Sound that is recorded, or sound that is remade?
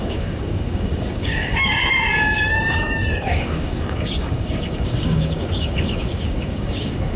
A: remade